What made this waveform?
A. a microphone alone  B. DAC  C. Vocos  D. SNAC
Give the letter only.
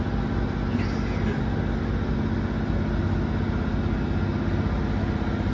A